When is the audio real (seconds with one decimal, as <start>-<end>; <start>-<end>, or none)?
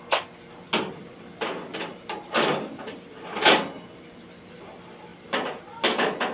0.0-5.1; 5.6-6.3